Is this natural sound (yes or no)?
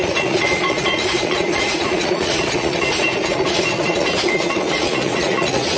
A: no